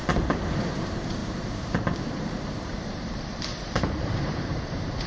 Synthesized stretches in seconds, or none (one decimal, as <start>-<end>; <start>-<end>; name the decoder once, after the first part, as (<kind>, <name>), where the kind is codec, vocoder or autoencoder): 0.6-5.1 (vocoder, BigVGAN v2)